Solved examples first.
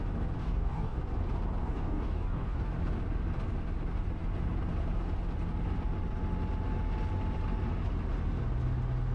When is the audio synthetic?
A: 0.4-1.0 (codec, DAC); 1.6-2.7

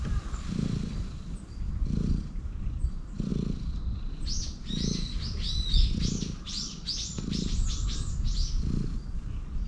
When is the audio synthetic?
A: 0.0-9.7 (vocoder, BigVGAN v2)

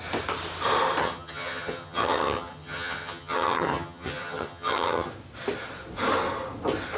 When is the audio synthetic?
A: 1.0-5.1 (vocoder, HiFi-GAN)

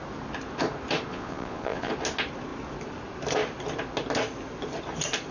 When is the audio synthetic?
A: 1.1-1.9 (vocoder, Vocos)

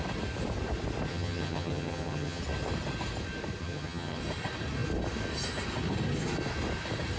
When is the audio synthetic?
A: 1.1-2.4 (vocoder, HiFi-GAN); 3.6-4.2

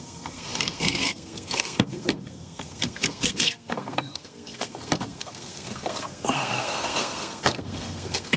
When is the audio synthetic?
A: 0.0-8.4 (codec, SNAC)

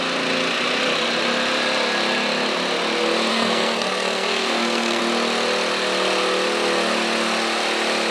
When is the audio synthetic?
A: 3.3-5.0 (codec, SNAC)